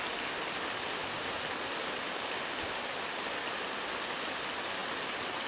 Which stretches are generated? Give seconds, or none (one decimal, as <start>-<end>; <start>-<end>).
1.0-2.1